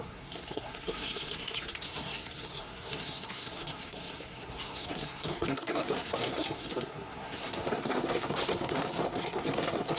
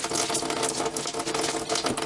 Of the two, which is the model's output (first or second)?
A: first